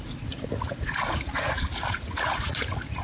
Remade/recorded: remade